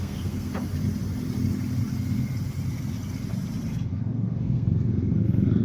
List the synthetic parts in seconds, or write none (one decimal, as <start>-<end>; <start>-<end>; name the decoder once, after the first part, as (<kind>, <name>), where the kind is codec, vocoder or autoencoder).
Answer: 0.0-0.5 (codec, SNAC); 3.9-5.6